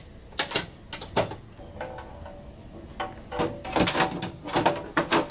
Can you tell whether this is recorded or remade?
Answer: recorded